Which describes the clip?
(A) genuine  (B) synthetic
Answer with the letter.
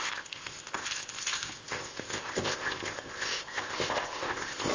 B